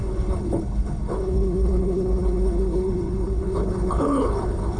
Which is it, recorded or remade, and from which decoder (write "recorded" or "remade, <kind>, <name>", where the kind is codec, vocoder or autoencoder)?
remade, codec, HILCodec